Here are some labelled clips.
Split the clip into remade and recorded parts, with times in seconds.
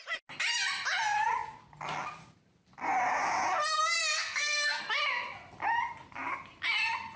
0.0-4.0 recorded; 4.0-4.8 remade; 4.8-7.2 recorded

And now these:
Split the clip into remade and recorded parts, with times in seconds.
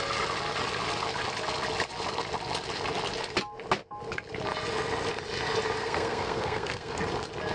0.0-5.8 recorded; 5.8-7.0 remade; 7.0-7.5 recorded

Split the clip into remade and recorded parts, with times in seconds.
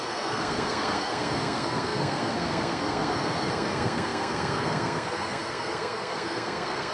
0.0-6.9 remade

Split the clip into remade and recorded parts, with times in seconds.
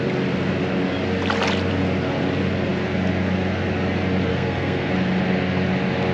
0.0-4.3 recorded; 4.3-4.9 remade; 4.9-6.1 recorded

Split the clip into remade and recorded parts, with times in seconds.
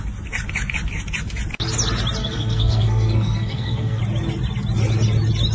0.0-2.2 recorded; 2.2-4.0 remade; 4.0-5.5 recorded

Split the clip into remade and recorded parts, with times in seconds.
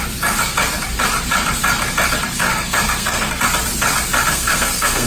0.0-2.4 recorded; 2.4-3.3 remade; 3.3-4.3 recorded; 4.3-5.1 remade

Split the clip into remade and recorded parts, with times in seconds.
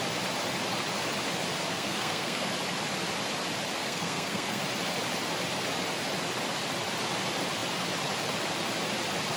0.0-1.7 recorded; 1.7-2.5 remade; 2.5-3.8 recorded; 3.8-4.6 remade; 4.6-9.4 recorded